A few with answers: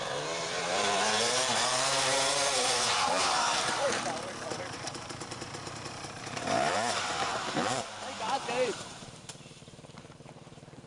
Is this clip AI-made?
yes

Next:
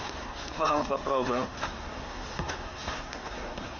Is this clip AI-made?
yes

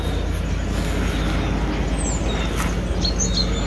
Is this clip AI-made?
no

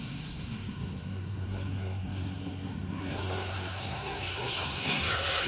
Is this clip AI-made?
yes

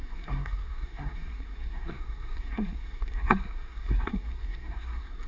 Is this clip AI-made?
yes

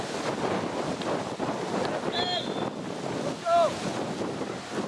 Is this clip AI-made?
no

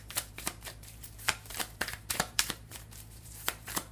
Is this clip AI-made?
yes